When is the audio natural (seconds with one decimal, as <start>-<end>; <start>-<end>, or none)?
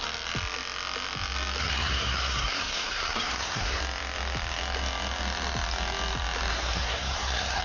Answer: 0.0-1.6; 3.8-6.5